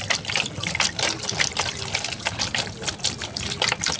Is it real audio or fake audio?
real